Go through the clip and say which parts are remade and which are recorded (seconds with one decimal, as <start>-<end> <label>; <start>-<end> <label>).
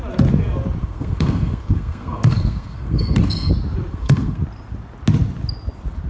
0.0-0.8 recorded; 0.8-3.5 remade; 3.5-3.9 recorded; 3.9-4.4 remade; 4.4-6.1 recorded